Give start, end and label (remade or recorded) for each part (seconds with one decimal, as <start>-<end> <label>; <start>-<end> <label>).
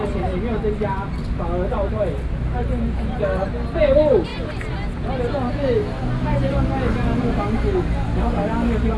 0.0-9.0 recorded